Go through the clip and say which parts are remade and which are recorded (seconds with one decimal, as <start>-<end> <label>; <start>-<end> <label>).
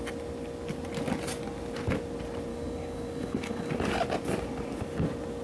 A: 0.0-2.5 recorded; 2.5-3.7 remade; 3.7-5.4 recorded